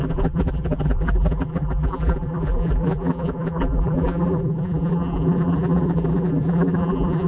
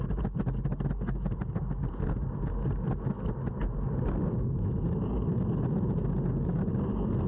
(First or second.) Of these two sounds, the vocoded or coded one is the first